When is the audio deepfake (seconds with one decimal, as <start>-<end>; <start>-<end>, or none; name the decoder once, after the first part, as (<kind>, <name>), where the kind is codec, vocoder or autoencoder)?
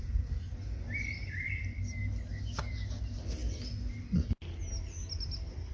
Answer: none